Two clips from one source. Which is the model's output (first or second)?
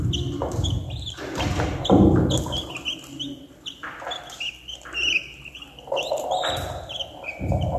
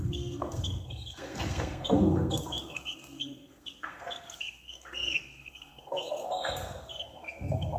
second